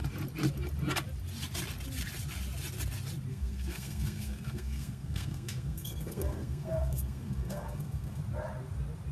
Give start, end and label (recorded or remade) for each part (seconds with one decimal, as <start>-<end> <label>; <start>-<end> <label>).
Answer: 0.0-3.3 recorded; 3.3-8.2 remade; 8.2-9.1 recorded